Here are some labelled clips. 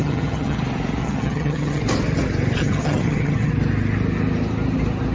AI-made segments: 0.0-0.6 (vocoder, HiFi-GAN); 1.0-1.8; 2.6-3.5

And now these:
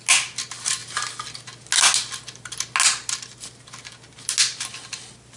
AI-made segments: none

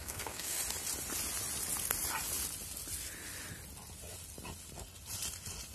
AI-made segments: 0.0-0.6 (codec, SNAC)

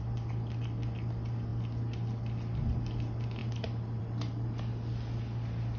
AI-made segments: none